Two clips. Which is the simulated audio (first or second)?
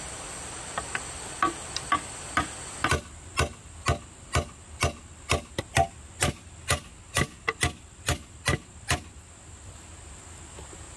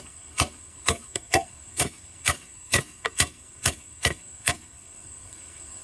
second